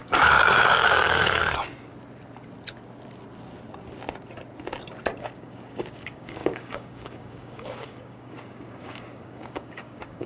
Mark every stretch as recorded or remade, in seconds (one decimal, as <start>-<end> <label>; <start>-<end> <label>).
0.0-1.4 remade; 1.4-5.2 recorded; 5.2-10.3 remade